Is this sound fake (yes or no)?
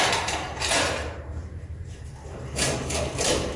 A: yes